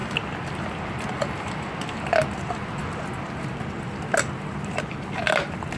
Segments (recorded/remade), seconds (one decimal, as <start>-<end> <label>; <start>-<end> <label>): 0.0-5.8 recorded